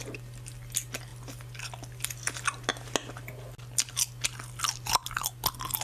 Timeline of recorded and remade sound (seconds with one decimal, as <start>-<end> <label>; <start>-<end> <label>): 0.0-5.8 recorded